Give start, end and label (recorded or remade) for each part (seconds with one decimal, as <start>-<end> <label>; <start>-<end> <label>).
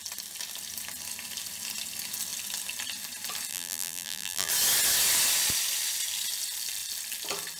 0.0-3.5 recorded; 3.5-4.5 remade; 4.5-7.6 recorded